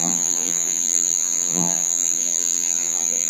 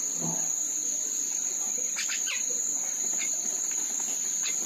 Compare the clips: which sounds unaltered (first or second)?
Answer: second